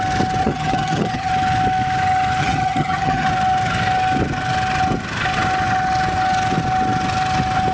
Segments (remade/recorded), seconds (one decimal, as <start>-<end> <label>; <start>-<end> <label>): 0.0-0.4 recorded; 0.4-1.3 remade; 1.3-2.4 recorded; 2.4-3.3 remade; 3.3-7.7 recorded

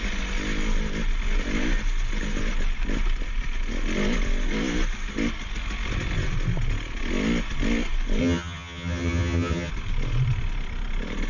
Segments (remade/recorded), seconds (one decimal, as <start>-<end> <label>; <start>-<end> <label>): 0.0-8.2 recorded; 8.2-9.7 remade; 9.7-11.3 recorded

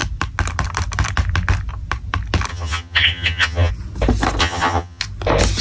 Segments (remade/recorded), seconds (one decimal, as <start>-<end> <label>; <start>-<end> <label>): 0.0-2.5 recorded; 2.5-3.7 remade; 3.7-4.4 recorded; 4.4-5.0 remade; 5.0-5.6 recorded

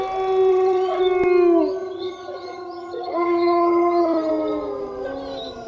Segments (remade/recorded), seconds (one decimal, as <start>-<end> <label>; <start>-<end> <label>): 0.0-0.5 recorded; 0.5-1.0 remade; 1.0-1.8 recorded; 1.8-4.3 remade; 4.3-5.7 recorded

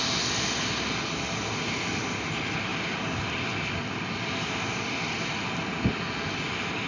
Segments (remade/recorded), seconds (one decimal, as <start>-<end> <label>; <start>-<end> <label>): 0.0-6.9 recorded

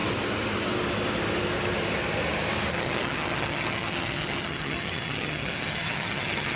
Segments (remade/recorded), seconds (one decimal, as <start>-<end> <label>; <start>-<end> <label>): 0.0-2.7 recorded; 2.7-6.6 remade

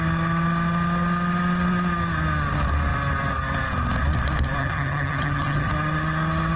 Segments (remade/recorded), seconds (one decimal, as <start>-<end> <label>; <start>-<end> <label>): 0.0-4.6 recorded; 4.6-5.7 remade; 5.7-6.6 recorded

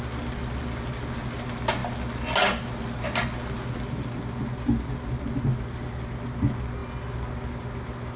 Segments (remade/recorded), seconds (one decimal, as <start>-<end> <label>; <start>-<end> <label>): 0.0-8.2 recorded